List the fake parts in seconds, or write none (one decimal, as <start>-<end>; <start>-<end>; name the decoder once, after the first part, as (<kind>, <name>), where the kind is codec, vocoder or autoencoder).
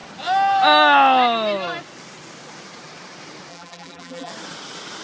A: 3.5-4.3 (vocoder, BigVGAN v2)